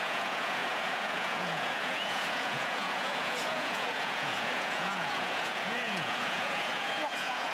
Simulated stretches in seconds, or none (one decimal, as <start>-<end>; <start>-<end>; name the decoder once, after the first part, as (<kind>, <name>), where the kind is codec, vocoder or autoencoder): 0.0-7.5 (vocoder, Vocos)